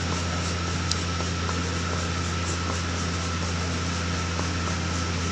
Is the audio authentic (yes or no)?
yes